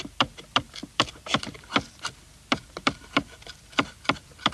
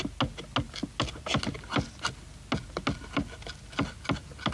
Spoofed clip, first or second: first